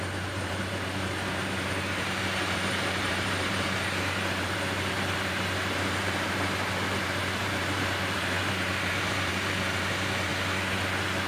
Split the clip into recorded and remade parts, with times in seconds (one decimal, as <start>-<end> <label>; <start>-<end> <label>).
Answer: 0.0-10.3 remade; 10.3-11.3 recorded